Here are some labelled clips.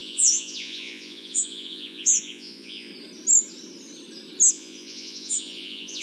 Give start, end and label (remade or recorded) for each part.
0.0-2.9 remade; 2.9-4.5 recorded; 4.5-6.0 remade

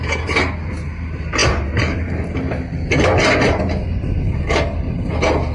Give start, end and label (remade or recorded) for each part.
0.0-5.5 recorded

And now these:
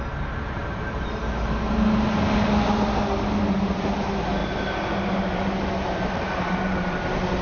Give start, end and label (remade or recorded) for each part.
0.0-0.6 recorded; 0.6-1.1 remade; 1.1-7.4 recorded

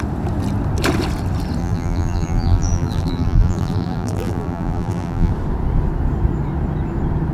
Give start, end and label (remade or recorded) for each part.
0.0-1.6 recorded; 1.6-5.3 remade; 5.3-7.3 recorded

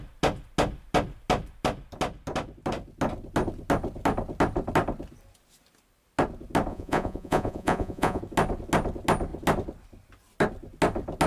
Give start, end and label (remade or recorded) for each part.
0.0-6.7 recorded; 6.7-8.2 remade; 8.2-11.3 recorded

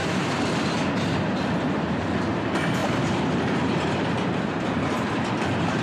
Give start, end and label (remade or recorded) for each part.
0.0-0.6 remade; 0.6-2.8 recorded; 2.8-5.8 remade

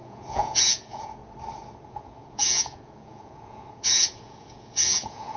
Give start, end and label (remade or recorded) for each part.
0.0-1.2 remade; 1.2-1.9 recorded; 1.9-5.4 remade